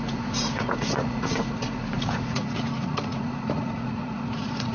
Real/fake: fake